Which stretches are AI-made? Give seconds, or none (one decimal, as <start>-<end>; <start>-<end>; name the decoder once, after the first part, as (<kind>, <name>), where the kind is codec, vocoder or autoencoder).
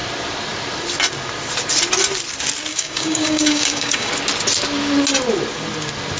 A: 2.7-4.1 (codec, DAC)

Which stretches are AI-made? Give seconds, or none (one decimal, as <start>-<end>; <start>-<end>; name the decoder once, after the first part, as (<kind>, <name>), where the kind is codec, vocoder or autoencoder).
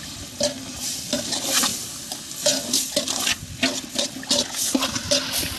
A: none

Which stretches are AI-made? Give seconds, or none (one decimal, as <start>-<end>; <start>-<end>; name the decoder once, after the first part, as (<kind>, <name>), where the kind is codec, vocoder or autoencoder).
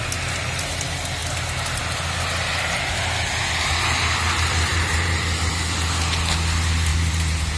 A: 4.7-5.5 (vocoder, BigVGAN v2); 6.9-7.6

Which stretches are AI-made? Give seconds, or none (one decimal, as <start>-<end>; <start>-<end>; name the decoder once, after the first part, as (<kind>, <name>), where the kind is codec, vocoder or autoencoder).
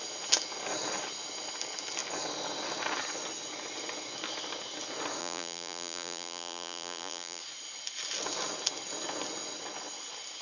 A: 5.2-7.4 (vocoder, BigVGAN v2)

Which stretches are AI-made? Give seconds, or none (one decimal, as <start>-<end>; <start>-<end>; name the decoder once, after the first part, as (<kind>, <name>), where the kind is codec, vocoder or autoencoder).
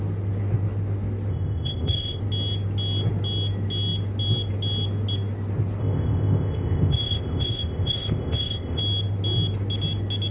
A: 1.3-2.2 (codec, ZipCodec); 5.8-8.8